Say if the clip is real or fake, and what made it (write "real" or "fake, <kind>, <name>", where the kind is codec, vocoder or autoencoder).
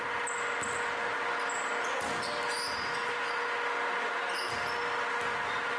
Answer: real